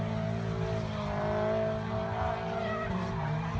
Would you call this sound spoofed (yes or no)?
no